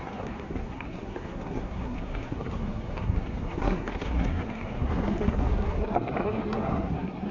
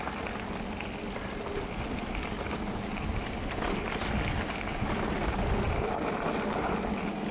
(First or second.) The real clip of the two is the second